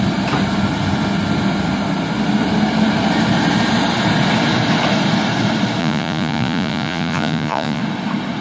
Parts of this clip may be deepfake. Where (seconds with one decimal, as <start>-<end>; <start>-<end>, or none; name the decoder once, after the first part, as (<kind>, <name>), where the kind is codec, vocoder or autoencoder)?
5.8-7.8 (vocoder, Vocos)